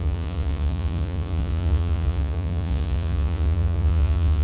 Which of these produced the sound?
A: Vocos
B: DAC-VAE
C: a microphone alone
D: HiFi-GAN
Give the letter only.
A